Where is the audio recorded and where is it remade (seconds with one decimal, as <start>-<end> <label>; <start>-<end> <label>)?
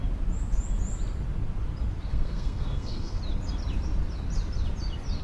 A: 0.0-2.1 recorded; 2.1-3.2 remade; 3.2-5.2 recorded